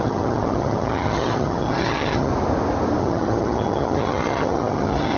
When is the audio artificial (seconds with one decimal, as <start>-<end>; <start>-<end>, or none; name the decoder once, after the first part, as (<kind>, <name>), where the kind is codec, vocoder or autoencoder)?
0.0-2.3 (vocoder, HiFi-GAN); 3.0-5.2